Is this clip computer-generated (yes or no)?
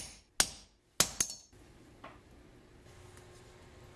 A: no